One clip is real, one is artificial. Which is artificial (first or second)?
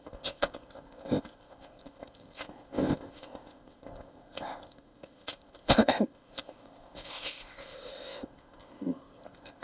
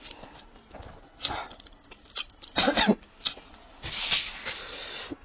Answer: first